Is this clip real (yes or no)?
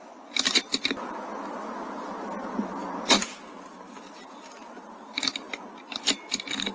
yes